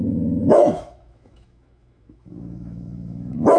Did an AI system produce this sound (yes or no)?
yes